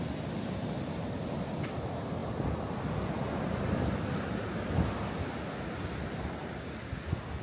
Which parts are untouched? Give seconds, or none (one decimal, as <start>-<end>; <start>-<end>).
0.0-7.4